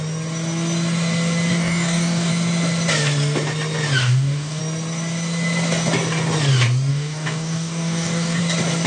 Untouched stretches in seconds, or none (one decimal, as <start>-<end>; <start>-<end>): 0.0-1.5; 2.3-4.0; 4.6-6.9; 8.4-8.9